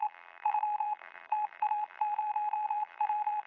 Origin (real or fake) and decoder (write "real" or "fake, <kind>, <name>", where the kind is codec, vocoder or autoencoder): fake, vocoder, BigVGAN v2